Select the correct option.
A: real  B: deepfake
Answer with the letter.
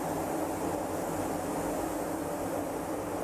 A